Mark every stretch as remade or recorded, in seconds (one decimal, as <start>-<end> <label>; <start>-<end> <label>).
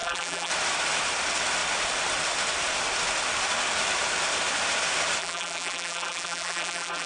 0.0-0.5 remade; 0.5-5.2 recorded; 5.2-7.1 remade